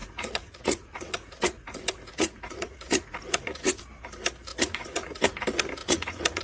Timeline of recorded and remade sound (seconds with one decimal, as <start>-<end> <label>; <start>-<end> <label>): 0.0-3.8 remade; 3.8-4.5 recorded; 4.5-5.2 remade; 5.2-5.8 recorded; 5.8-6.4 remade